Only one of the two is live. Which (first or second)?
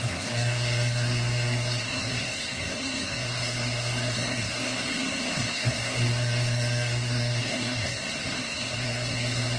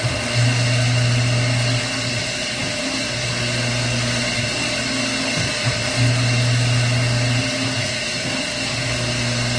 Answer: second